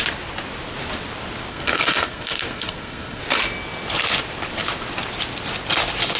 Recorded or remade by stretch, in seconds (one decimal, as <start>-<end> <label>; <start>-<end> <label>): 0.0-1.5 recorded; 1.5-3.2 remade; 3.2-6.2 recorded